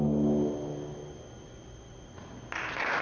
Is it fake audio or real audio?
real